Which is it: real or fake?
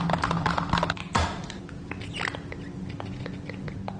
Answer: real